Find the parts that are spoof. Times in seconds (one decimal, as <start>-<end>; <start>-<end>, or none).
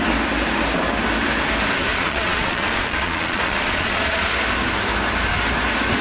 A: 1.8-4.3